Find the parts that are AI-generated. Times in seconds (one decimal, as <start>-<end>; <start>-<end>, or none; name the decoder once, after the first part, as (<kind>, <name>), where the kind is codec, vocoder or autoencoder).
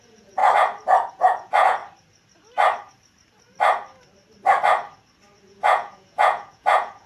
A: 0.0-0.4 (vocoder, Vocos); 1.1-1.8; 5.4-7.1